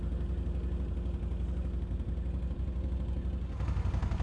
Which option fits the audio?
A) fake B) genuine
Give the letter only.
B